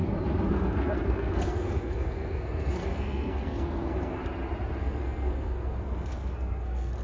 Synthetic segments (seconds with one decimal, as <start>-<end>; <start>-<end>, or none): 0.5-4.2; 4.8-7.0